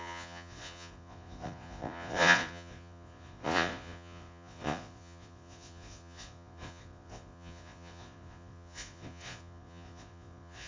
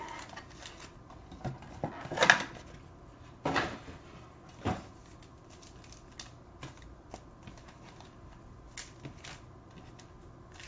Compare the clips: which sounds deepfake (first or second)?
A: first